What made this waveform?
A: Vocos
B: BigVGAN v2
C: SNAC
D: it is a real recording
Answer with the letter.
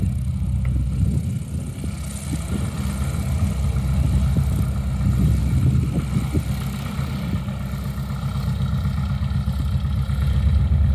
D